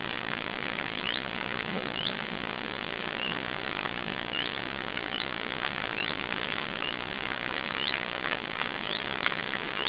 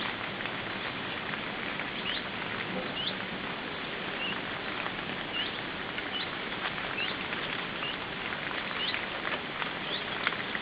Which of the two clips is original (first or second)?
second